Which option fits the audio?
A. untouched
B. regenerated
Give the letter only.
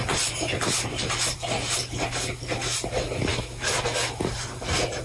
A